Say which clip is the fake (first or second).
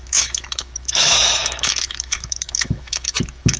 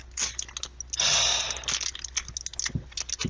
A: first